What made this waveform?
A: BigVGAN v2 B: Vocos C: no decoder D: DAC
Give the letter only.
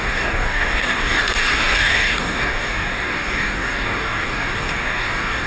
D